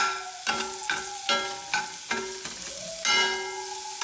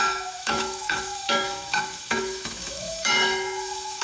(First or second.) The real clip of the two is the first